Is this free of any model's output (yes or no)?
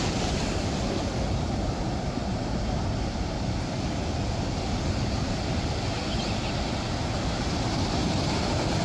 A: yes